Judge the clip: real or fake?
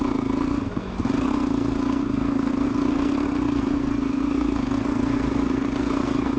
fake